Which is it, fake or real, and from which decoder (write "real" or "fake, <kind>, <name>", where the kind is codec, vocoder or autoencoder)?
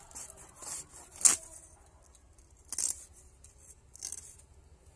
real